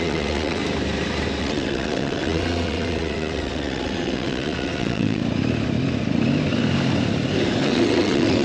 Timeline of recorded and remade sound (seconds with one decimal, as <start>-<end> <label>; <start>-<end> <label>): 0.0-0.6 remade; 0.6-1.4 recorded; 1.4-5.2 remade; 5.2-7.6 recorded; 7.6-8.4 remade